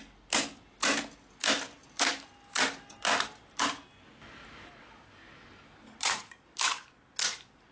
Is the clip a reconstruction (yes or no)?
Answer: no